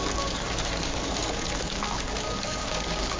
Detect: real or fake fake